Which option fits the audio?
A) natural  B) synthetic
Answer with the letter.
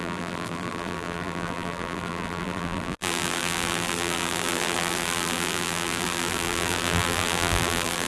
B